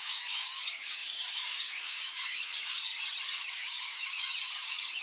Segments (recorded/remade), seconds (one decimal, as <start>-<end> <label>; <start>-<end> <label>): 0.0-2.9 remade; 2.9-3.5 recorded; 3.5-5.0 remade